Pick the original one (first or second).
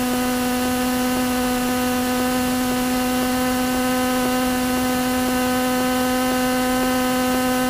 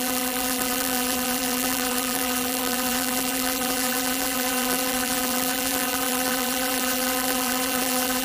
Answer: first